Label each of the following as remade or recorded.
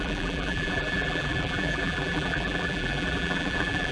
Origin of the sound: remade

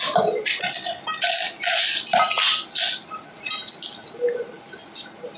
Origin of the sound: recorded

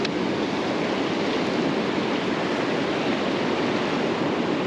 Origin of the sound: recorded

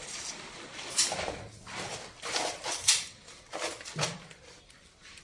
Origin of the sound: remade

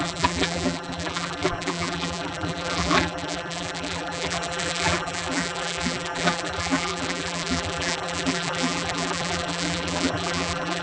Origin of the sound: remade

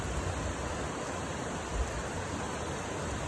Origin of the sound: recorded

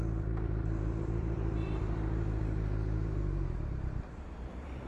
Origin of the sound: remade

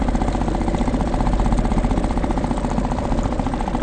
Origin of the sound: remade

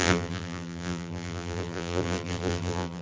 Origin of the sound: remade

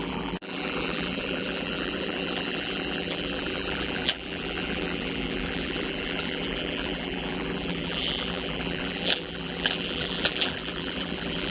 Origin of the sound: remade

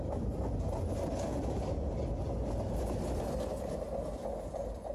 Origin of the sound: recorded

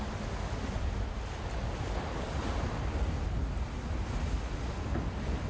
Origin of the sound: recorded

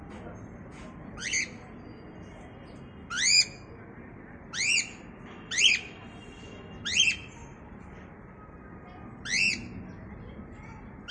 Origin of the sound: recorded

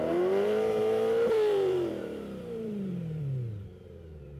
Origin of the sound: remade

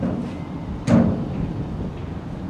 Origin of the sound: recorded